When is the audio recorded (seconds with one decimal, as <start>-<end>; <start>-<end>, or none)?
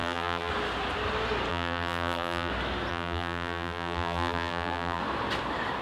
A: 0.5-1.5; 2.5-2.9; 5.0-5.8